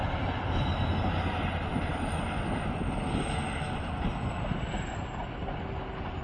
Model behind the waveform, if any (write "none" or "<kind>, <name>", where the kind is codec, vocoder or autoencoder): none